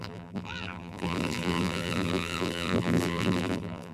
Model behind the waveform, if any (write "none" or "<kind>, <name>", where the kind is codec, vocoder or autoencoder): vocoder, BigVGAN v2